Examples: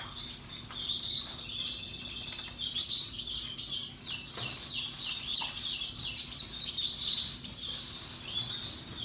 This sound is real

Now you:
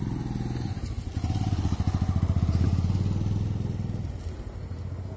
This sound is real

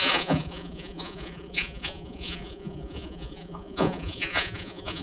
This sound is fake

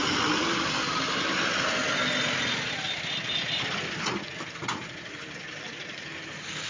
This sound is real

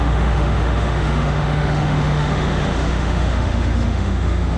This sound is fake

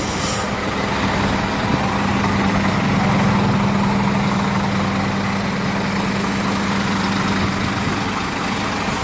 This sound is real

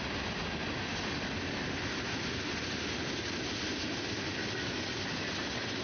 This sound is real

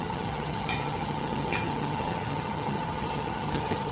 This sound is fake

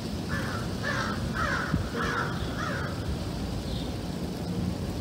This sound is real